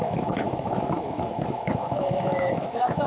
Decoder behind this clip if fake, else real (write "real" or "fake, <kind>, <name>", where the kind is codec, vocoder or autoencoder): fake, autoencoder, DAC-VAE